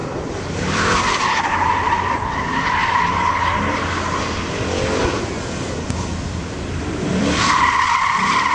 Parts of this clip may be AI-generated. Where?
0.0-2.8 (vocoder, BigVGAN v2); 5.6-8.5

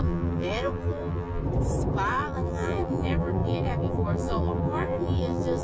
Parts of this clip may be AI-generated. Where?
0.0-1.4 (vocoder, BigVGAN v2); 2.1-5.6

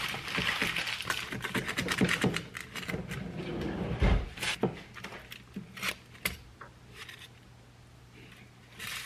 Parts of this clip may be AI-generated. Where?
none

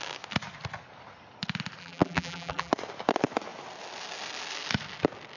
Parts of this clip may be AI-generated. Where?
1.8-2.7 (vocoder, BigVGAN v2)

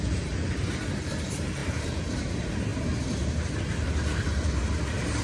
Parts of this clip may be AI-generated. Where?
0.0-2.7 (vocoder, BigVGAN v2); 3.2-4.6